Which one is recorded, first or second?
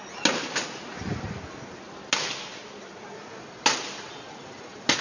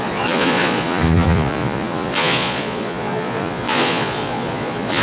first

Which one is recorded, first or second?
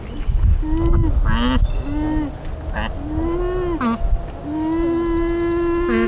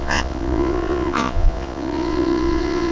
first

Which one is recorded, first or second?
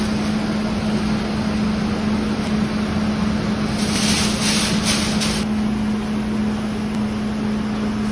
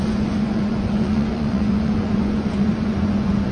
first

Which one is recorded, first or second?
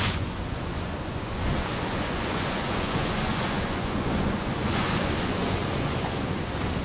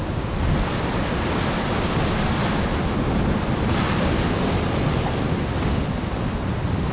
second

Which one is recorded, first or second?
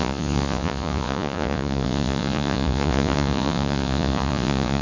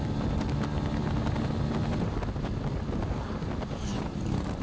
second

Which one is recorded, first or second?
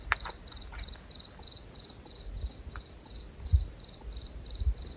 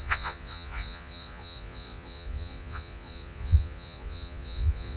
first